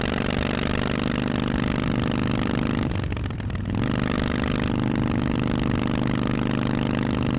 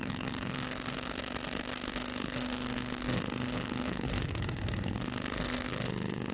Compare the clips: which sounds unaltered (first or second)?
first